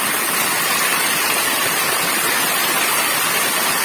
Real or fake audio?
real